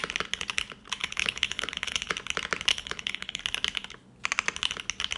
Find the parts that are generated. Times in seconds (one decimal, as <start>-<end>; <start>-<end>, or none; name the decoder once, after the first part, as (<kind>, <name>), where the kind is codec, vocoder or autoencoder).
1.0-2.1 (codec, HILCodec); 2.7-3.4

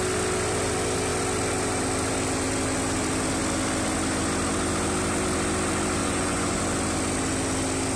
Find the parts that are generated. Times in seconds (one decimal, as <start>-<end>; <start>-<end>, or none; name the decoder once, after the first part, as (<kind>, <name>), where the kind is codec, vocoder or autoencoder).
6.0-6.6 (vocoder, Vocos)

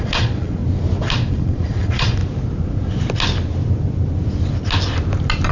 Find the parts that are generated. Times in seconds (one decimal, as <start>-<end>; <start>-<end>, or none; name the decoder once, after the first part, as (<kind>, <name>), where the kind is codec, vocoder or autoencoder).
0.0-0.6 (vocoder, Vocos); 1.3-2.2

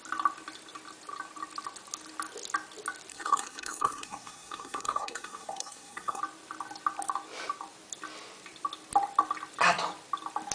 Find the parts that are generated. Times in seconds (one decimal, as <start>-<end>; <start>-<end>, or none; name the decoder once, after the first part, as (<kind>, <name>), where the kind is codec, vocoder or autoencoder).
3.1-6.2 (codec, SNAC)

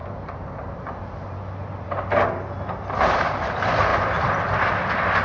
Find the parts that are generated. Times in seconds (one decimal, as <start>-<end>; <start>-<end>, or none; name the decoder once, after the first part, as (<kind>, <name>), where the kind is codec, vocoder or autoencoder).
0.0-1.2 (vocoder, BigVGAN v2); 3.9-4.7

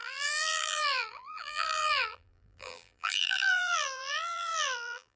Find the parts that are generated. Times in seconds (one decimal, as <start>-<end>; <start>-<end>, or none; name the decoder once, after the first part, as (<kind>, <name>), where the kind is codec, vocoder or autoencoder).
0.0-5.2 (vocoder, BigVGAN v2)

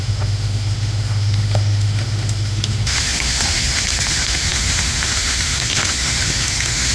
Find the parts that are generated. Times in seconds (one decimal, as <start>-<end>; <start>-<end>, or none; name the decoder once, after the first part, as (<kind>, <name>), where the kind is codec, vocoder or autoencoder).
0.0-6.9 (autoencoder, DAC-VAE)

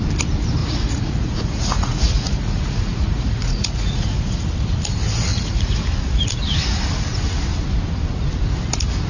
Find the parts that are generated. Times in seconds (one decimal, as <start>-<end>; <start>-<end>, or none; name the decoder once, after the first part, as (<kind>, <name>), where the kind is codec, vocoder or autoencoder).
0.6-4.4 (vocoder, Vocos); 5.3-5.8